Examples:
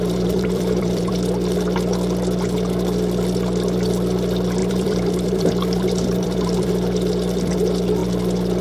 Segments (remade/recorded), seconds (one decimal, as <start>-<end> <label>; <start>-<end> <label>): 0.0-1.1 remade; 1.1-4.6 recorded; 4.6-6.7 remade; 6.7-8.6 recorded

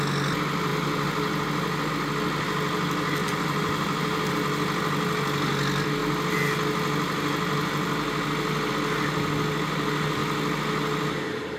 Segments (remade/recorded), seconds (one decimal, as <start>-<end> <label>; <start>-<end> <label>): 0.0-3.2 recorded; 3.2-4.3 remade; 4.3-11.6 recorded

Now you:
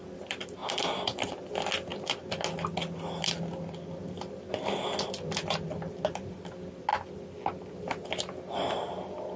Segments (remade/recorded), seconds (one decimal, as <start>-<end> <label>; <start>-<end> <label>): 0.0-0.6 recorded; 0.6-1.3 remade; 1.3-9.4 recorded

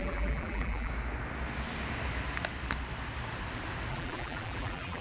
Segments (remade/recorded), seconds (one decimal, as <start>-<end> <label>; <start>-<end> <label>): 0.0-0.9 remade; 0.9-3.9 recorded; 3.9-5.0 remade

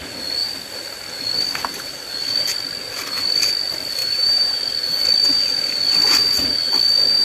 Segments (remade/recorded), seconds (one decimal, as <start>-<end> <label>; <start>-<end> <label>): 0.0-4.0 recorded; 4.0-4.6 remade; 4.6-7.2 recorded

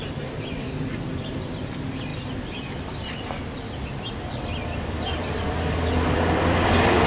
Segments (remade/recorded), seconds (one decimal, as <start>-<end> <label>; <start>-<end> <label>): 0.0-4.7 recorded; 4.7-7.1 remade

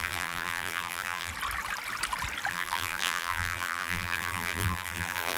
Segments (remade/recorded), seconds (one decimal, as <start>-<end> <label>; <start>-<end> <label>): 0.0-1.3 remade; 1.3-2.5 recorded; 2.5-5.4 remade

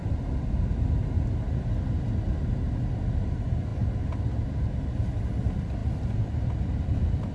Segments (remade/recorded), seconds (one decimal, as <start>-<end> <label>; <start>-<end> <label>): 0.0-2.4 remade; 2.4-5.8 recorded; 5.8-6.4 remade; 6.4-7.3 recorded